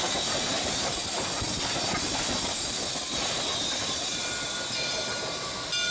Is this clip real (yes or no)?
yes